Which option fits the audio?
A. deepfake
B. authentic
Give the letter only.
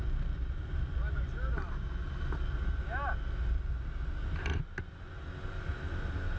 B